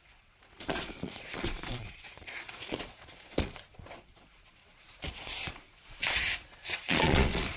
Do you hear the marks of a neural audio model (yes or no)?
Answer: yes